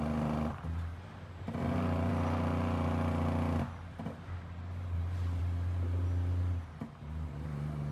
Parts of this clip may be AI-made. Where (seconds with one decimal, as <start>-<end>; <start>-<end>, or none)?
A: none